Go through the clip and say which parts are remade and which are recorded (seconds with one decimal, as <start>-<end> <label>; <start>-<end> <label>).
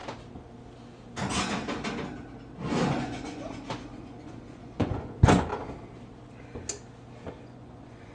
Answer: 0.0-2.9 recorded; 2.9-5.5 remade; 5.5-7.4 recorded; 7.4-8.1 remade